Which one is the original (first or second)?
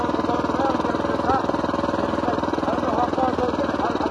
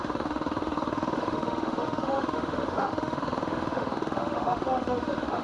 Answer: first